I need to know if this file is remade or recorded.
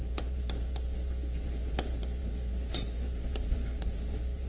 remade